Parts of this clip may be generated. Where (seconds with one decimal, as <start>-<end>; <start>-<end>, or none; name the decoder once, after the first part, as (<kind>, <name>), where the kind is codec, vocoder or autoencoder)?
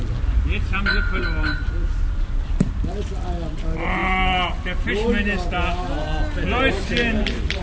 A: none